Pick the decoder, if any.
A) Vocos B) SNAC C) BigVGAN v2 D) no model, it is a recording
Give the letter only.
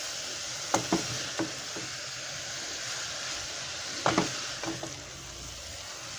D